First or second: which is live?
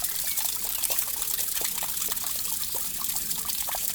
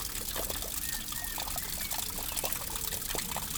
second